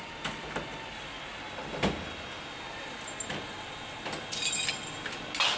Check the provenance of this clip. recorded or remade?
recorded